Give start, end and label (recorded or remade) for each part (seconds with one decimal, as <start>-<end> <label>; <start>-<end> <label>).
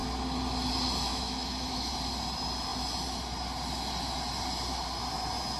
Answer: 0.0-1.1 recorded; 1.1-1.9 remade; 1.9-5.6 recorded